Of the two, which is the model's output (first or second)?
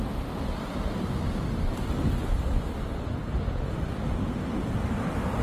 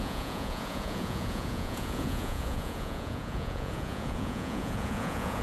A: second